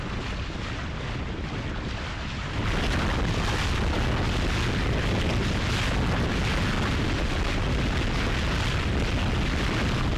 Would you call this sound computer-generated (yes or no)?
no